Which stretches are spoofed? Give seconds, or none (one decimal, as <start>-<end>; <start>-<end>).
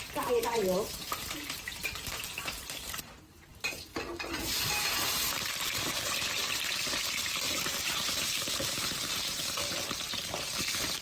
0.0-6.4; 7.2-11.0